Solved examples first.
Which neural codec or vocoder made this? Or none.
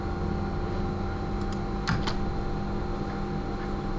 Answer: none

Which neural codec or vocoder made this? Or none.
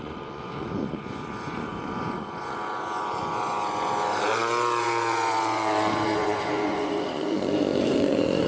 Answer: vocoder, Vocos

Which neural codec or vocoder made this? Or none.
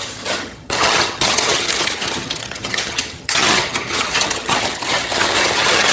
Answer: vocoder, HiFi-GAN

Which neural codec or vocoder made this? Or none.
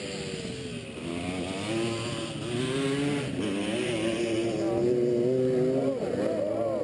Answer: none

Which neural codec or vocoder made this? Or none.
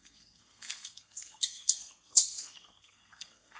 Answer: codec, SNAC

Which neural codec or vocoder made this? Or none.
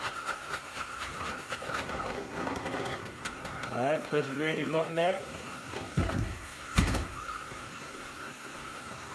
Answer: codec, SNAC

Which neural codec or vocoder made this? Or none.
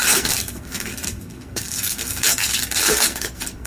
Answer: codec, SNAC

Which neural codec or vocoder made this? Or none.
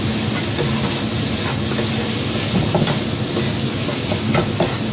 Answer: none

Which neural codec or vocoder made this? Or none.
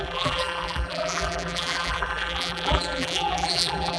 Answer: vocoder, BigVGAN v2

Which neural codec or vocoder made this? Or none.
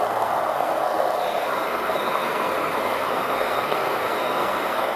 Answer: codec, SNAC